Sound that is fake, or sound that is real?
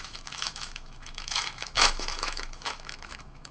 fake